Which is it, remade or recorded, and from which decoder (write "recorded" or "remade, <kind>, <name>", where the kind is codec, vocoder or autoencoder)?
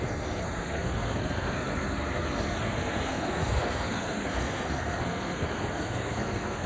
remade, codec, SNAC